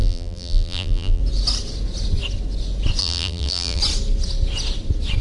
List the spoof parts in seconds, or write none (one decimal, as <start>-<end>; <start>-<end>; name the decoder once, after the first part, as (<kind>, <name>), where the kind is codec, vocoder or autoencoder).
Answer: 0.0-1.2 (vocoder, BigVGAN v2); 3.0-3.8